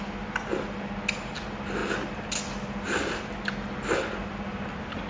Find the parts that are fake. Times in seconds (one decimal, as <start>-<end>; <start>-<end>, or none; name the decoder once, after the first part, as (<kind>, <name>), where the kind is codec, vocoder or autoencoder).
none